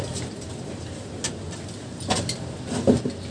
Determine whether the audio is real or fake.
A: real